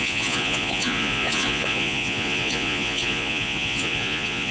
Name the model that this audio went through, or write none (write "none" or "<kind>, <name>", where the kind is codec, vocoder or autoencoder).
vocoder, Vocos